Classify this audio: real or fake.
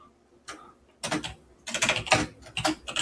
real